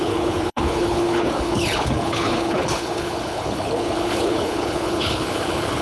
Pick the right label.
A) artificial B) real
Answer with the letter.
A